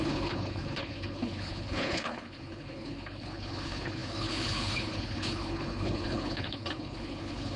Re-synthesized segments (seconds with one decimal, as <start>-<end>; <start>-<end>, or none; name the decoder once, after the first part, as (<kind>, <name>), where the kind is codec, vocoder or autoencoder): 0.0-7.6 (codec, HILCodec)